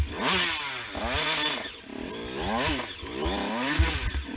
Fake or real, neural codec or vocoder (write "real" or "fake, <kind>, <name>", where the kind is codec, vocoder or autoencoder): real